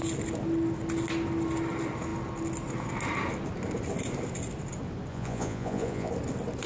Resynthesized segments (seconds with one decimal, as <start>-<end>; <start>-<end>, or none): 5.1-6.1